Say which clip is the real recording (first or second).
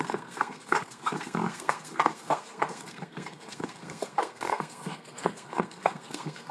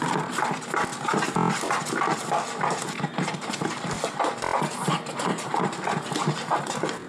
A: second